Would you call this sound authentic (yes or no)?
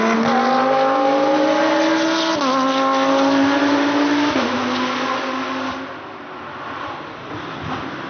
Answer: yes